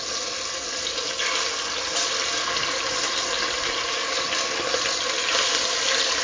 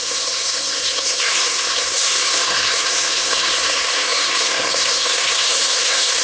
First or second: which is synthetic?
second